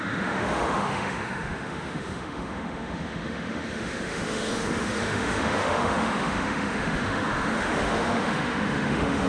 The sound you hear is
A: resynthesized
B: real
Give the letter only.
A